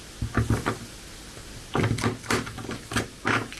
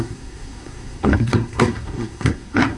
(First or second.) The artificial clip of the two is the second